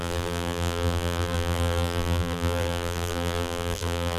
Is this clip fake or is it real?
fake